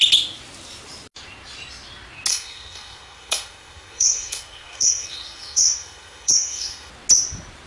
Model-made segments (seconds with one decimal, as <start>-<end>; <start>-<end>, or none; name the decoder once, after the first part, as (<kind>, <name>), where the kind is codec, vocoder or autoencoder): 2.3-6.9 (codec, SNAC)